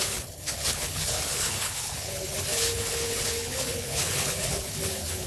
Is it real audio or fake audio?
fake